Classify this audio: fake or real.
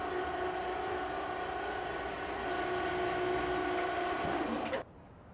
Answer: real